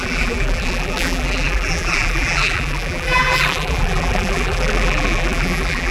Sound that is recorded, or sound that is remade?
remade